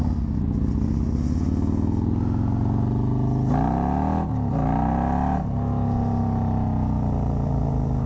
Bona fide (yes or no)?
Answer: yes